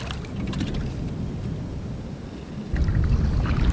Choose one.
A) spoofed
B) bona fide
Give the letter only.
B